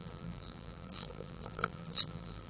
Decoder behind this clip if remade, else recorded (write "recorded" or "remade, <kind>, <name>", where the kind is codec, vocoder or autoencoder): remade, vocoder, BigVGAN v2